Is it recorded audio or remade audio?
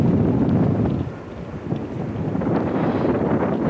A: recorded